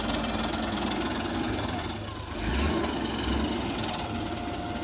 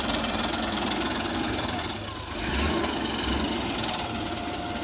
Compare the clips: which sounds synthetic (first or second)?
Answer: second